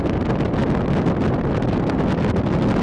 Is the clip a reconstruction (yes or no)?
no